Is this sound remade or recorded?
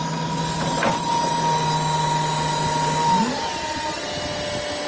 recorded